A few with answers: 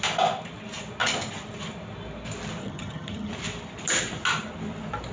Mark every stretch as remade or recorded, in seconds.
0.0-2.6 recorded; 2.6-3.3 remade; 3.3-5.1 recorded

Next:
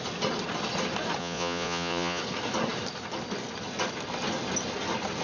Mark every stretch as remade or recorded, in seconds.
0.0-1.2 recorded; 1.2-2.2 remade; 2.2-5.2 recorded

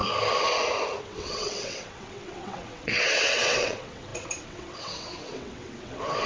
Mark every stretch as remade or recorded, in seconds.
0.0-1.0 recorded; 1.0-6.3 remade

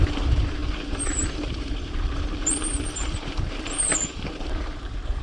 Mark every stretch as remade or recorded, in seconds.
0.0-5.2 remade